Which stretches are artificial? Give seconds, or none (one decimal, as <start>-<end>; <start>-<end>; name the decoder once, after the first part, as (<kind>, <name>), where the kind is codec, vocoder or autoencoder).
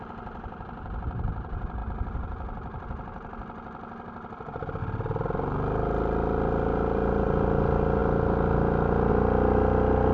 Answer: none